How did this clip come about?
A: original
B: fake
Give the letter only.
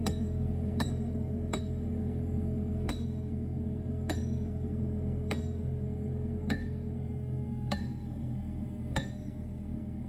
B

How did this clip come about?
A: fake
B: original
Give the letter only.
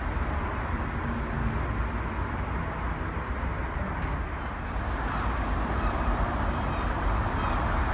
B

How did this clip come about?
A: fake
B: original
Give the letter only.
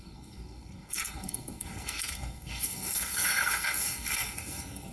A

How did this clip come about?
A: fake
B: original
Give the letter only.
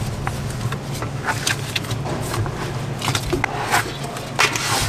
B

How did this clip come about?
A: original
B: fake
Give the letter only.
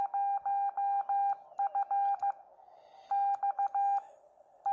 A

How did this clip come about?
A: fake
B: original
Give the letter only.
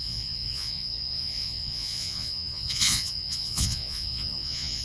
A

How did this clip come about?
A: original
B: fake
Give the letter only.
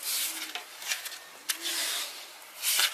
A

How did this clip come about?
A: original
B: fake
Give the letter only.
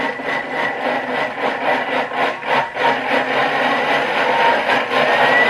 A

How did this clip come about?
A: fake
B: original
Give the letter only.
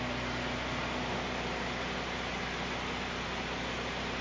B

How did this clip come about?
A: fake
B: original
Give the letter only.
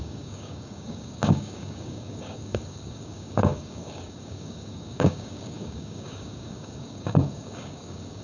A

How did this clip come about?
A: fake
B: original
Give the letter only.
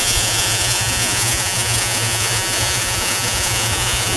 A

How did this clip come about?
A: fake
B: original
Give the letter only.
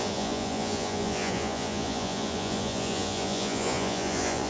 A